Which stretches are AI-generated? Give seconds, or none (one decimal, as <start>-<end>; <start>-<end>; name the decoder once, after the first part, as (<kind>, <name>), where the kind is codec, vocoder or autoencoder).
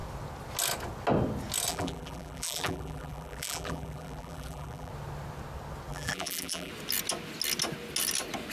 1.7-4.9 (vocoder, BigVGAN v2); 5.9-6.7